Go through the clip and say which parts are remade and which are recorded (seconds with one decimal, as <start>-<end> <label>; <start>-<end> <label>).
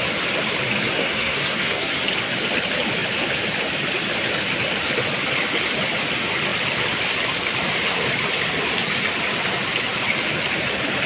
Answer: 0.0-0.9 recorded; 0.9-2.0 remade; 2.0-11.1 recorded